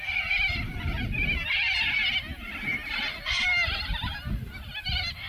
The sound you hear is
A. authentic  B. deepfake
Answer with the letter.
A